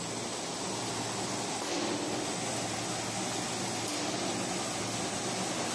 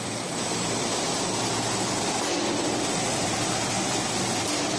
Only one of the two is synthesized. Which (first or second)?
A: second